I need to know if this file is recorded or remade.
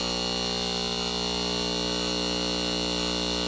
recorded